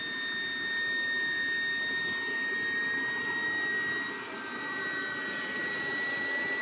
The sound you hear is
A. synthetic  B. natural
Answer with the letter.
B